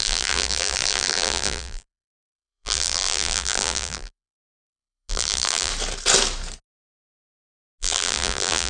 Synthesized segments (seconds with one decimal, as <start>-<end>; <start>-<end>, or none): 0.0-5.7; 7.8-8.7